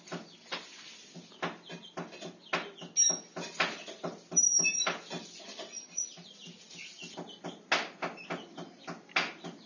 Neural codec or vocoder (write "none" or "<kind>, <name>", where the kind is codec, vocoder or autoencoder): none